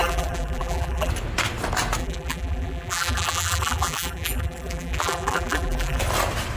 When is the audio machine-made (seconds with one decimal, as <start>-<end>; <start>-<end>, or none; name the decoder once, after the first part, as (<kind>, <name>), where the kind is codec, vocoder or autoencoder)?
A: 0.0-1.1 (vocoder, BigVGAN v2); 2.0-6.0